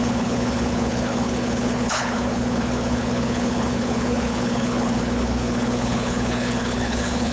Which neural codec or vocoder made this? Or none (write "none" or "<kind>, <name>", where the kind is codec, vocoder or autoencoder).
codec, HILCodec